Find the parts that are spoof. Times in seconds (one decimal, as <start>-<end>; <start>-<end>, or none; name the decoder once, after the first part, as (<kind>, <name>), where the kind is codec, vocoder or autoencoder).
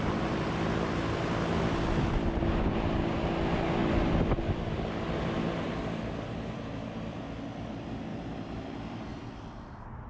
3.8-5.2 (vocoder, BigVGAN v2); 8.1-8.7; 9.1-9.7